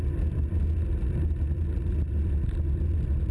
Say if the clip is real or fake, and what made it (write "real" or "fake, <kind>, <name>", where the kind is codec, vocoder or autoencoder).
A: real